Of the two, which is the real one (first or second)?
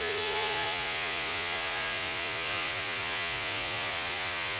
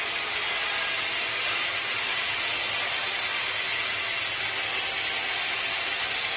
second